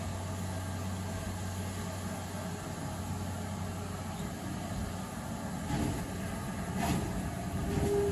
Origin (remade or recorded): recorded